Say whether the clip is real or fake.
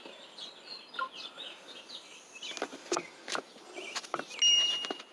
real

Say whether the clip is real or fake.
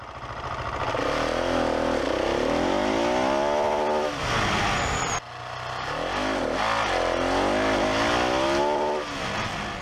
real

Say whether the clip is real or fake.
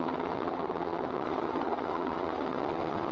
fake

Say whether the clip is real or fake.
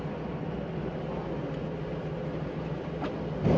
real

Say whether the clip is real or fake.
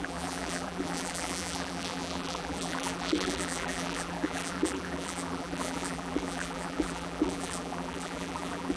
fake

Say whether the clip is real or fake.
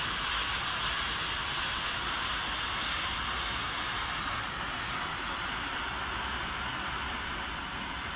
real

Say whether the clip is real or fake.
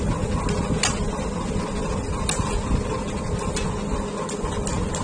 real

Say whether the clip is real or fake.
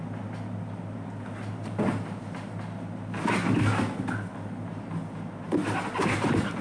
real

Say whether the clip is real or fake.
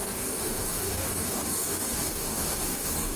fake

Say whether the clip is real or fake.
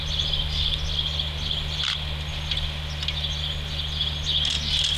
real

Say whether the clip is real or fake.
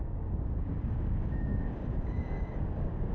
fake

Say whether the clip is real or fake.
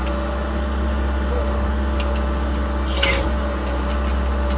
real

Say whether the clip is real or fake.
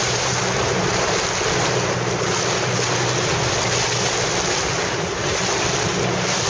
real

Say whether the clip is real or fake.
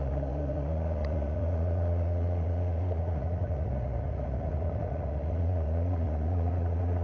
fake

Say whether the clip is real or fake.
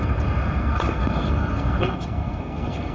fake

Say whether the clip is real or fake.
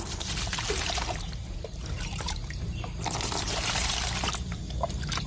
fake